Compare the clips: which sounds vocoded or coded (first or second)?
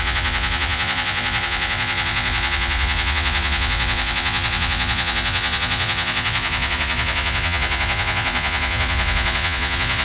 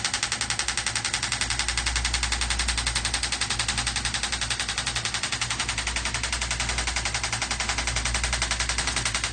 first